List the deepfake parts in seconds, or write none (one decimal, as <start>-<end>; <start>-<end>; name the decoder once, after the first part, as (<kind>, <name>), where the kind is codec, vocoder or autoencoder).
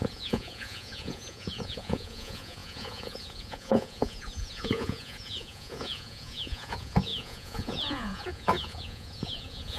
0.0-9.8 (vocoder, Vocos)